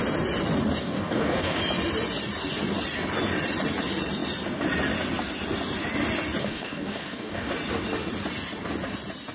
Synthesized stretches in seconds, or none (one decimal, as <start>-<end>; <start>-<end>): 0.8-1.6; 6.4-7.5